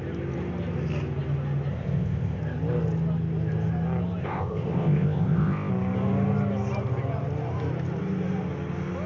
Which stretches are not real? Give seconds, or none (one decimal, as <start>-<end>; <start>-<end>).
1.7-2.4; 4.2-5.7